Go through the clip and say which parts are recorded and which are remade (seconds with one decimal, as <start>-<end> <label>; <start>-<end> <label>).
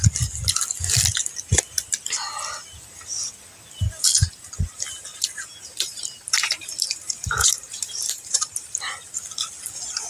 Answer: 0.0-5.1 recorded; 5.1-8.8 remade; 8.8-10.1 recorded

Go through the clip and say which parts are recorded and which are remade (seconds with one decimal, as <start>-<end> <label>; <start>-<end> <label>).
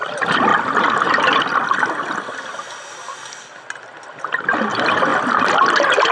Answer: 0.0-5.1 recorded; 5.1-6.1 remade